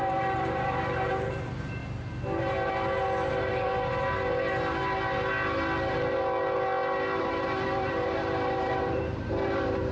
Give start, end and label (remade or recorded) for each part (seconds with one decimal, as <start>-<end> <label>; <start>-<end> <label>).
0.0-1.8 remade; 1.8-3.3 recorded; 3.3-3.7 remade; 3.7-7.2 recorded; 7.2-9.9 remade